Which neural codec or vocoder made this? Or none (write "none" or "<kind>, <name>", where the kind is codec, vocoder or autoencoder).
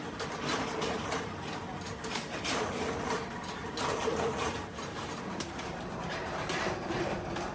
vocoder, BigVGAN v2